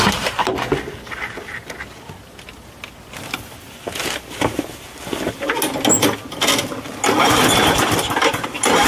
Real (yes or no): yes